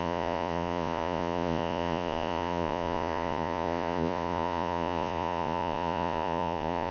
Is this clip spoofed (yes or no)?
yes